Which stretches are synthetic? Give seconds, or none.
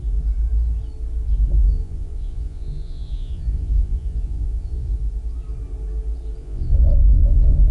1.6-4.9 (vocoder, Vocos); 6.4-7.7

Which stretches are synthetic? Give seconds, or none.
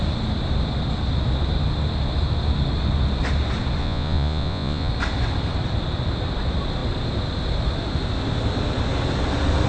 3.8-4.9 (vocoder, Vocos)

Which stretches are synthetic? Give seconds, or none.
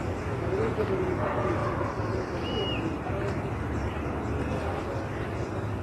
none